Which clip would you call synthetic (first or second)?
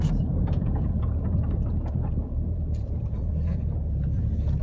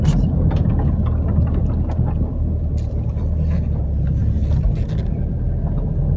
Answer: first